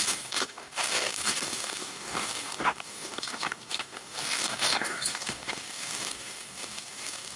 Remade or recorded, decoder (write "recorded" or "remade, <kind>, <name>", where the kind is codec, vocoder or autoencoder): remade, codec, DAC